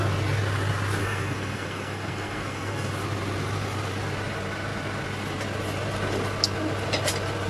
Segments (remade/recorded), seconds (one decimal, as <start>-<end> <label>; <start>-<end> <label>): 0.0-1.0 recorded; 1.0-2.9 remade; 2.9-7.5 recorded